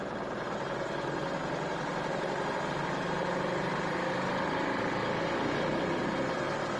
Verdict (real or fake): real